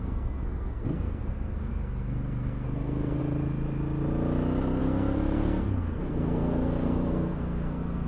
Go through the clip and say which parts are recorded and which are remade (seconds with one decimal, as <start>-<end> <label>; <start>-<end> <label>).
0.0-3.2 remade; 3.2-4.8 recorded; 4.8-8.1 remade